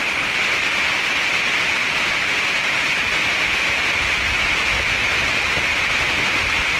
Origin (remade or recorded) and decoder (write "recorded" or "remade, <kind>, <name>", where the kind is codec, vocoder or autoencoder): recorded